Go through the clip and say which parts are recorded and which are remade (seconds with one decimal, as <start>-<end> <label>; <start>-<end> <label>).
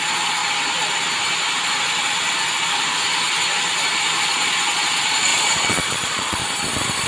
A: 0.0-0.4 remade; 0.4-4.2 recorded; 4.2-6.4 remade; 6.4-7.1 recorded